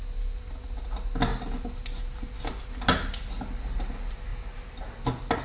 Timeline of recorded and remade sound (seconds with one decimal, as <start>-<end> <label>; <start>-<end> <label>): 0.0-5.4 recorded